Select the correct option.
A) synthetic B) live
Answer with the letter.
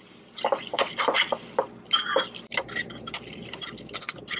A